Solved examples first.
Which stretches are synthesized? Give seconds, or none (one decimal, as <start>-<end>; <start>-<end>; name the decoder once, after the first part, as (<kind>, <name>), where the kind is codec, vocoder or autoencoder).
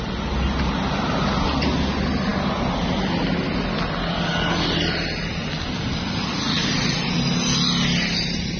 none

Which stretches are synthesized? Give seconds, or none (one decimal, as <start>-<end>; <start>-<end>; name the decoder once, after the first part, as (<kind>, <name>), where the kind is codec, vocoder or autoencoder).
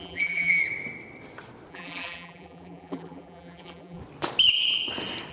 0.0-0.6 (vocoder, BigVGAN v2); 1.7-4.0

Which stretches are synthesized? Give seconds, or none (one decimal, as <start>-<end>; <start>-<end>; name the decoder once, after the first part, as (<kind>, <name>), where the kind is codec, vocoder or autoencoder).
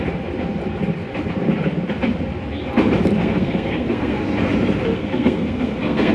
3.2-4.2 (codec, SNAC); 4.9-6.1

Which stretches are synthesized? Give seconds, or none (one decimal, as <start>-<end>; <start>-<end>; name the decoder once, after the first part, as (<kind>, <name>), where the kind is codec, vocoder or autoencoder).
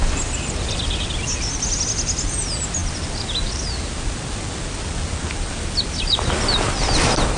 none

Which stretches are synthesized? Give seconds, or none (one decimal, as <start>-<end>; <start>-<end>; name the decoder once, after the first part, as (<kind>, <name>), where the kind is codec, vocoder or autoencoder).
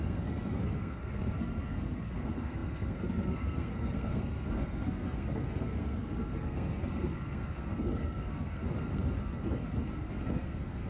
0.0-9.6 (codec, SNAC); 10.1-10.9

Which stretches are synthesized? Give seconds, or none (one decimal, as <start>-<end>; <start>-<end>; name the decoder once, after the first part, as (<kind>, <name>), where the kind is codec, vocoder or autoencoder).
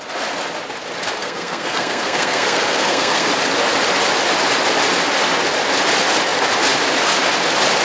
1.2-3.3 (codec, SNAC)